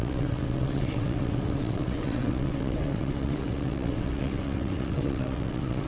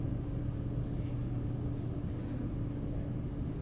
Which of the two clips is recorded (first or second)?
second